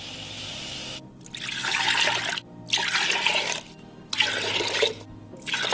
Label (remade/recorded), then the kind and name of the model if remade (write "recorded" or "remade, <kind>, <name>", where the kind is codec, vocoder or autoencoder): recorded